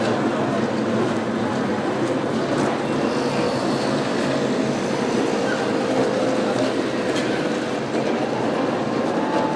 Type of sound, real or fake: real